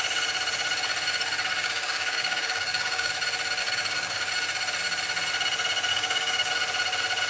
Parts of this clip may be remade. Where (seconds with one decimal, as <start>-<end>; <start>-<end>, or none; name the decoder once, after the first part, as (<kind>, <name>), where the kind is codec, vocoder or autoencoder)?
1.6-3.1 (codec, DAC); 3.6-4.3; 5.9-6.5